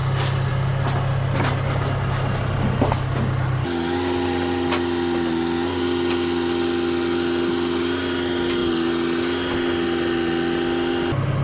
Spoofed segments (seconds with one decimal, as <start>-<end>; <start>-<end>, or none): none